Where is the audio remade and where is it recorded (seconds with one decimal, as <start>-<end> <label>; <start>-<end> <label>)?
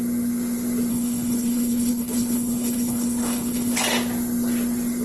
0.0-0.9 recorded; 0.9-3.8 remade; 3.8-5.0 recorded